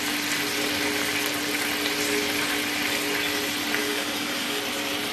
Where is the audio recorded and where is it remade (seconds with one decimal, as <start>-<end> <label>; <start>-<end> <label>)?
0.0-3.8 recorded; 3.8-4.6 remade; 4.6-5.1 recorded